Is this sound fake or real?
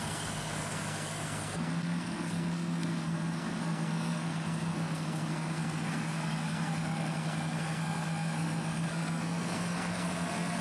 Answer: fake